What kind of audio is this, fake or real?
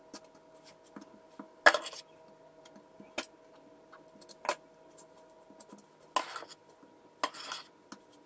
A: real